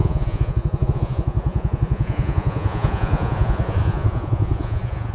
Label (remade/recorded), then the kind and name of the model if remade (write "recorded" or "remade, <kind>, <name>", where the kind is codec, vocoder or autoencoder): remade, vocoder, Vocos